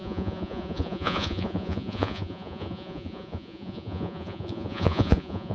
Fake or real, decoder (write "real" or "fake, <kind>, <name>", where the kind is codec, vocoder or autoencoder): fake, vocoder, Vocos